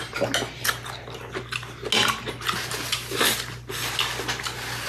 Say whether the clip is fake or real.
real